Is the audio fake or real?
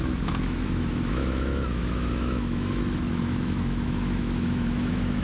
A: fake